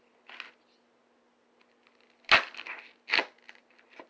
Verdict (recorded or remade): recorded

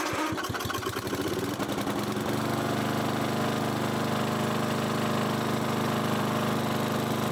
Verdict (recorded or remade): recorded